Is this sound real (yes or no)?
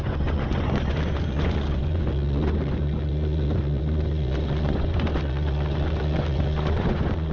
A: no